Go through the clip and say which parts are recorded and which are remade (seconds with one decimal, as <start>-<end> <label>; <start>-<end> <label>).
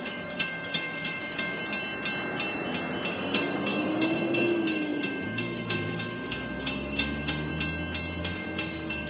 0.0-1.6 remade; 1.6-3.1 recorded; 3.1-7.5 remade; 7.5-8.2 recorded; 8.2-9.1 remade